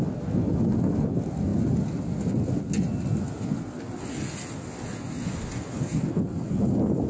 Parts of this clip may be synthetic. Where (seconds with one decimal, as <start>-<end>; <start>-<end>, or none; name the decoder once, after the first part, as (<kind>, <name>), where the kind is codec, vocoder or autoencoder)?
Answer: none